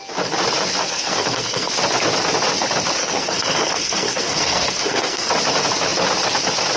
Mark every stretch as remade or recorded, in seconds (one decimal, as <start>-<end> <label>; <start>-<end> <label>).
0.0-0.8 recorded; 0.8-1.7 remade; 1.7-3.0 recorded; 3.0-5.3 remade; 5.3-6.8 recorded